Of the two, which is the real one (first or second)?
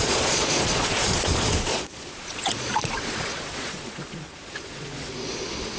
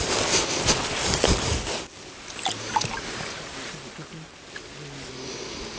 second